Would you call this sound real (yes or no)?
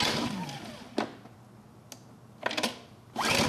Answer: yes